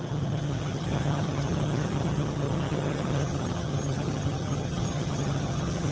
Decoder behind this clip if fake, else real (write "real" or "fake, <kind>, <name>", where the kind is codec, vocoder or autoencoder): fake, vocoder, HiFi-GAN